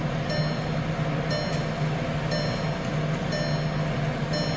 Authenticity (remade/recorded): recorded